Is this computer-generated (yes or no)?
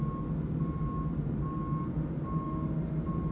no